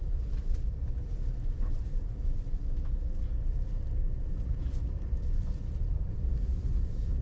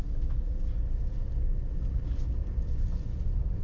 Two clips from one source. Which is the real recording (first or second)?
second